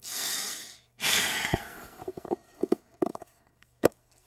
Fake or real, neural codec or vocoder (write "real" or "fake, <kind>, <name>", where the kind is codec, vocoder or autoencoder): fake, codec, SNAC